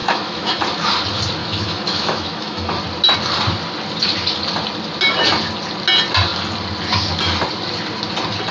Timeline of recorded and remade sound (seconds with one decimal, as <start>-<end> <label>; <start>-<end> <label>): 0.0-0.6 remade; 0.6-1.4 recorded; 1.4-2.8 remade; 2.8-8.5 recorded